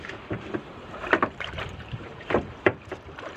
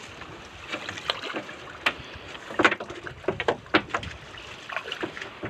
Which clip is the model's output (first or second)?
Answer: first